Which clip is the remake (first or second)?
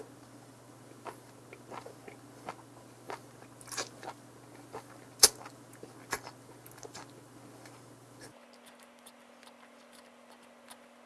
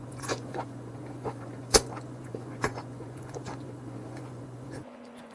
second